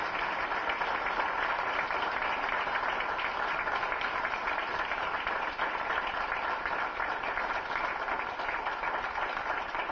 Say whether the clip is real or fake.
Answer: real